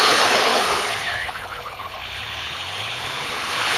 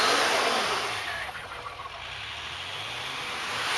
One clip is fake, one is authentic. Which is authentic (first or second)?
second